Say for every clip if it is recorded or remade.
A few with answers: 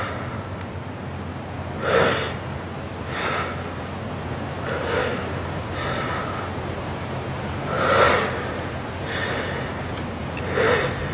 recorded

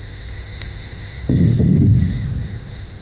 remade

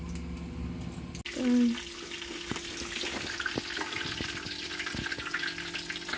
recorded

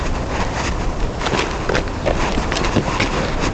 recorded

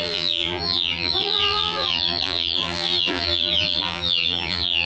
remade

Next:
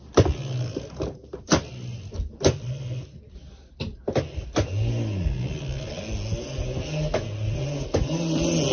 recorded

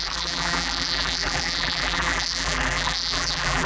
remade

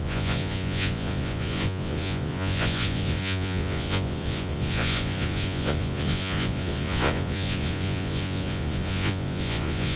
remade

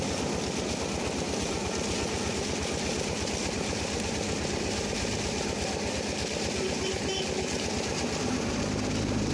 recorded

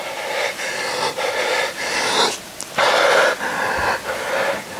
recorded